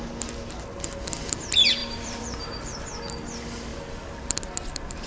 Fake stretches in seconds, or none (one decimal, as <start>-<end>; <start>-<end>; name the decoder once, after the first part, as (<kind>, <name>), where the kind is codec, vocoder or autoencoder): 1.8-3.1 (vocoder, BigVGAN v2); 3.7-4.4